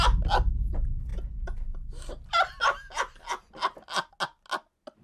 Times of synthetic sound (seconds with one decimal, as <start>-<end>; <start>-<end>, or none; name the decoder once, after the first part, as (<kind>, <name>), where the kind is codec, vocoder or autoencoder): none